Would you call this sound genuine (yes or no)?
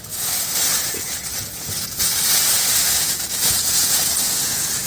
no